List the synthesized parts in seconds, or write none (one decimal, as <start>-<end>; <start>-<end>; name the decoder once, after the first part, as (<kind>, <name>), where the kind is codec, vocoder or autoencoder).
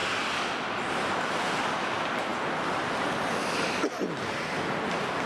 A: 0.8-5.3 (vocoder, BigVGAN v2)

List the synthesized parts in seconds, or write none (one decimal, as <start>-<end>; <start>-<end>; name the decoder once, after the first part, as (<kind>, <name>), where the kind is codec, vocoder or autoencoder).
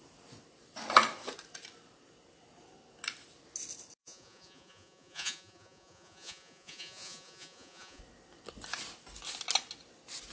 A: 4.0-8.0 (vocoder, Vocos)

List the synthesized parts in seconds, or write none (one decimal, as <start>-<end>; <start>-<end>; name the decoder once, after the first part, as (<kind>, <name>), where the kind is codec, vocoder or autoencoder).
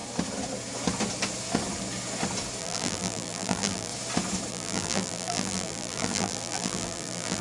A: 2.6-3.9 (vocoder, BigVGAN v2); 4.5-7.4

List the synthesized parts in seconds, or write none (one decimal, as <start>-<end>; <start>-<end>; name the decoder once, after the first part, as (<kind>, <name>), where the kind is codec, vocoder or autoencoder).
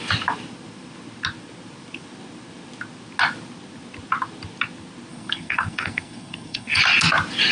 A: 5.1-6.8 (codec, SNAC)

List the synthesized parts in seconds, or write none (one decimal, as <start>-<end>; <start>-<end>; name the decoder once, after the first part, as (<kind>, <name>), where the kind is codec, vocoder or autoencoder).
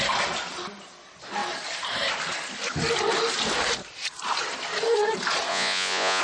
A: 5.5-6.2 (vocoder, Vocos)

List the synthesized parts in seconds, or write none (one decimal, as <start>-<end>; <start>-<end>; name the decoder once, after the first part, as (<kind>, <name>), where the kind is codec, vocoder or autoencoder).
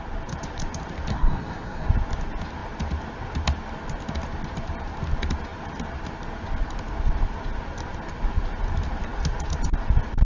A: 1.1-1.9 (codec, SNAC)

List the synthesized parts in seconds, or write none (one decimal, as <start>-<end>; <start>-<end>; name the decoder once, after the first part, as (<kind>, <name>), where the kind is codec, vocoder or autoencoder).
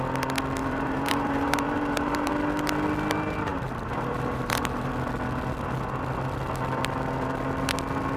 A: 0.6-2.3 (vocoder, BigVGAN v2); 3.5-4.9